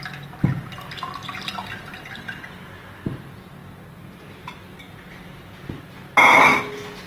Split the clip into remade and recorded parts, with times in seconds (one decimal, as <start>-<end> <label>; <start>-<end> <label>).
0.0-7.1 recorded